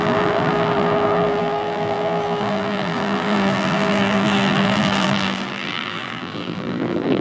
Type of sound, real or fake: fake